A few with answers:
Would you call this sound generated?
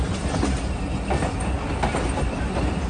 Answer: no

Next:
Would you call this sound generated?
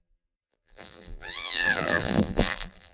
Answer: yes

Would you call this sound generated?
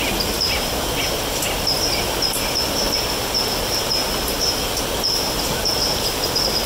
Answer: no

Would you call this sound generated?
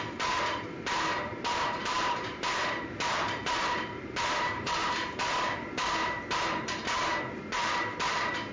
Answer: yes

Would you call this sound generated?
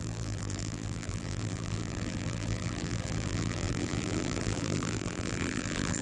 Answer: yes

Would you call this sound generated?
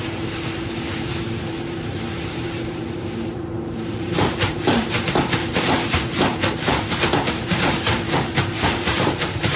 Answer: yes